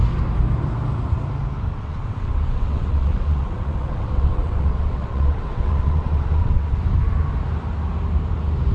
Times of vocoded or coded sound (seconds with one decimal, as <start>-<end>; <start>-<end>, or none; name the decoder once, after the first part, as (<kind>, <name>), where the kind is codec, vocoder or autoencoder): 1.7-6.8 (vocoder, WaveNeXt)

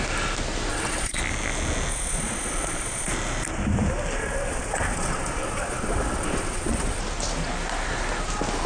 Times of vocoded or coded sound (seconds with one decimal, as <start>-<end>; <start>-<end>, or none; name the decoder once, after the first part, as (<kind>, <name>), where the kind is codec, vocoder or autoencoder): 0.7-1.2 (vocoder, Vocos); 1.9-3.1; 4.2-7.0

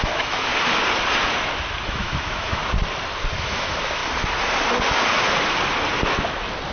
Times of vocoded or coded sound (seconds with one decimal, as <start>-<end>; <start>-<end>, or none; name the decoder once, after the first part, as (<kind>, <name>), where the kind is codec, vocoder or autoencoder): 0.0-0.5 (autoencoder, DAC-VAE); 1.8-2.6; 3.4-4.0

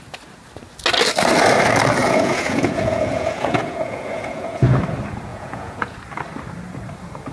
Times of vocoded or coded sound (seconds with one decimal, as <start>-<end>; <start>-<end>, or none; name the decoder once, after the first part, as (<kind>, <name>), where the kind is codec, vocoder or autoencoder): 2.0-4.8 (vocoder, Vocos); 5.3-6.0

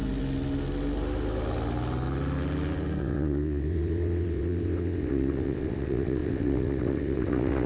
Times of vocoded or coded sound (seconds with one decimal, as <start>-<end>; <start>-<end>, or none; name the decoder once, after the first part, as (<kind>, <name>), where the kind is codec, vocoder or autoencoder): 3.0-7.7 (vocoder, WaveNeXt)

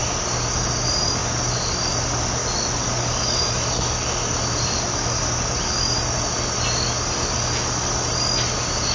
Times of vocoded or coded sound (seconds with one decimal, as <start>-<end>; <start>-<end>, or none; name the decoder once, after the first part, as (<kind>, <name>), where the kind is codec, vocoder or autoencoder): none

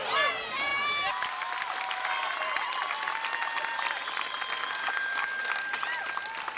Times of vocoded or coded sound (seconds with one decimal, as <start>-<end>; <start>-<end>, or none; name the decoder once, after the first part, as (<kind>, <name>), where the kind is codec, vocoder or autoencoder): 4.6-5.6 (codec, DAC)